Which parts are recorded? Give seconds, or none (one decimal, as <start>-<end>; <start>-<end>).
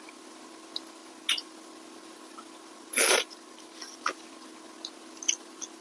0.0-5.8